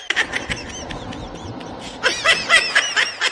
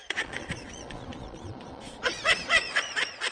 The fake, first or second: second